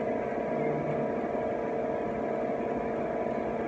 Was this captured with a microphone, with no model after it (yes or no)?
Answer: yes